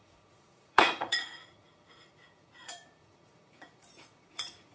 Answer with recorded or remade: remade